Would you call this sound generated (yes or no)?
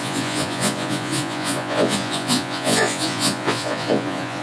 yes